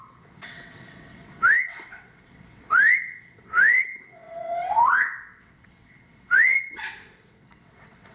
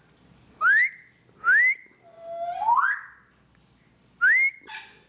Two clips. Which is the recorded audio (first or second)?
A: second